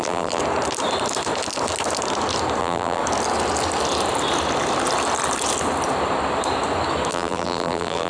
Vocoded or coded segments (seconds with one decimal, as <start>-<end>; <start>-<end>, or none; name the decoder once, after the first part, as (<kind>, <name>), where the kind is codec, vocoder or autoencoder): 0.0-0.4 (vocoder, BigVGAN v2); 2.6-3.0; 7.1-8.1